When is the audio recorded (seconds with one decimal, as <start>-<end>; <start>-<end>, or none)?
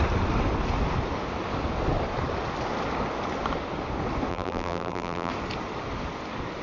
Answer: 0.0-4.3; 5.3-6.6